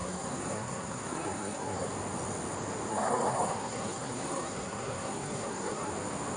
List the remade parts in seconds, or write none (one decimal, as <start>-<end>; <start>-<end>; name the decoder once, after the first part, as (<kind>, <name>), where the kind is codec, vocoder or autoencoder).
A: 0.0-1.9 (codec, SNAC); 2.9-5.9